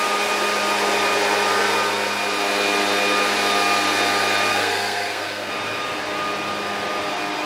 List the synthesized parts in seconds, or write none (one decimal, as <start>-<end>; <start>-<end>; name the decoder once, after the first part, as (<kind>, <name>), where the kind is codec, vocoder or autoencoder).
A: 4.5-5.5 (codec, SNAC)